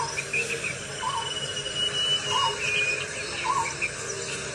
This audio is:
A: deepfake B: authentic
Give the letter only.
B